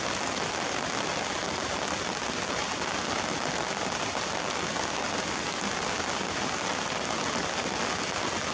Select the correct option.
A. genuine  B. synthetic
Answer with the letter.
A